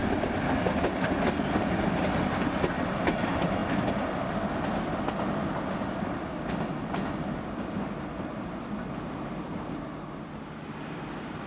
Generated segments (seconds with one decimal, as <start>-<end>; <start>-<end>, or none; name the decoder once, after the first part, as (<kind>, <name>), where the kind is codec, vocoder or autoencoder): none